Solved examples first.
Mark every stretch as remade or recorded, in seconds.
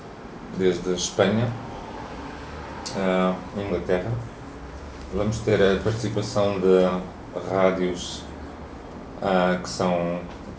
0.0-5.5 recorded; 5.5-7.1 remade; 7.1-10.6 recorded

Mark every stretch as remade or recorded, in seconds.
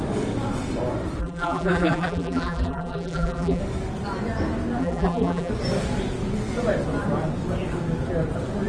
0.0-1.2 recorded; 1.2-3.6 remade; 3.6-4.8 recorded; 4.8-5.5 remade; 5.5-8.7 recorded